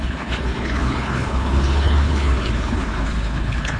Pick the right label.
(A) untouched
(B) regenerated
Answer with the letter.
B